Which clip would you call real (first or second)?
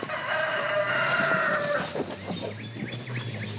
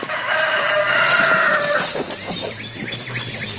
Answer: first